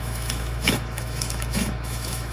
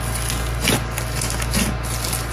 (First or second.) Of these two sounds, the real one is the second